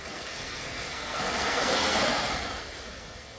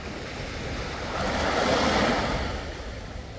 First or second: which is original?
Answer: second